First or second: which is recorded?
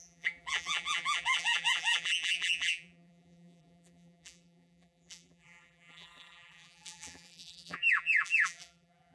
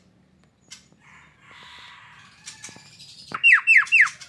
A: second